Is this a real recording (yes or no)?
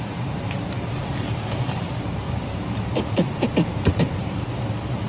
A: no